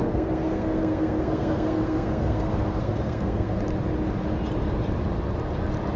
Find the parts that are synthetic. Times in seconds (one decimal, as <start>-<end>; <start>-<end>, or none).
0.0-3.6